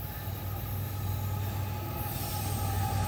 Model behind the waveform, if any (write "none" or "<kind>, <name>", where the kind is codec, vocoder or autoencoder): none